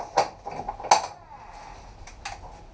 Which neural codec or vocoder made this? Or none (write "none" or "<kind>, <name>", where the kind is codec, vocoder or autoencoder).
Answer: none